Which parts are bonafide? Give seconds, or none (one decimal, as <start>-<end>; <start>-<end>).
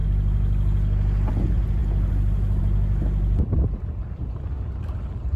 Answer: 0.0-5.4